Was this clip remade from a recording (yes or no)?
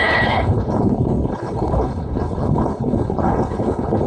yes